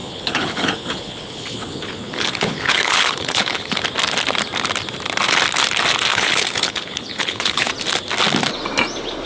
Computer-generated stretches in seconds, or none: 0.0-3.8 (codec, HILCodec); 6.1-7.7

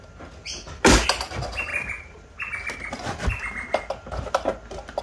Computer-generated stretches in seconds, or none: none

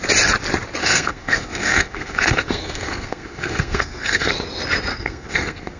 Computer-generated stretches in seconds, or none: 0.8-4.3 (codec, SNAC); 4.9-5.8

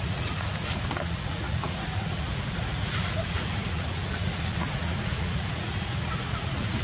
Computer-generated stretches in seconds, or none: 0.0-6.8 (vocoder, Vocos)

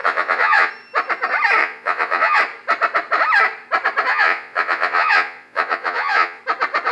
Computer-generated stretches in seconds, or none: 0.0-0.7 (vocoder, Vocos); 1.6-2.4; 4.1-6.4

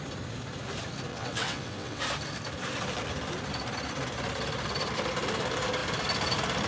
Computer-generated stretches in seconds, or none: 1.1-2.0 (vocoder, WaveNeXt)

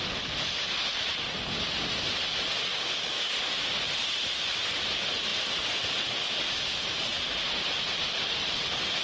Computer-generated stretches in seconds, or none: 2.7-3.3 (codec, DAC)

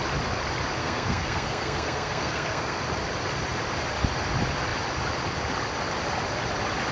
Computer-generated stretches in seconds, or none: 0.8-2.8 (codec, SNAC)